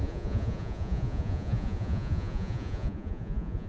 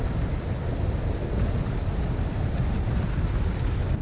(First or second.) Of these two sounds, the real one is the second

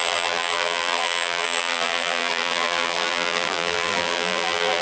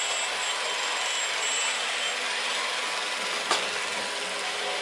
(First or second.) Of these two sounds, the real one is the second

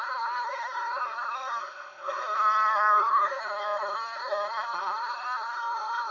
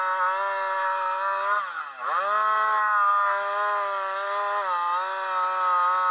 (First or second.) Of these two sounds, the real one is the second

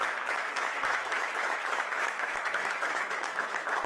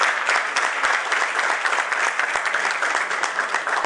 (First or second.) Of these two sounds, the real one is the second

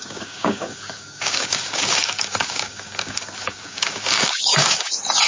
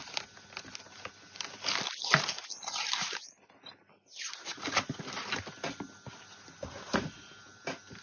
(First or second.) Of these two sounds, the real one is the second